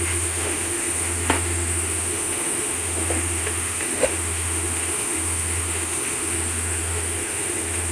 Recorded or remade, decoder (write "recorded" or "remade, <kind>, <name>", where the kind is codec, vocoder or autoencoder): remade, autoencoder, DAC-VAE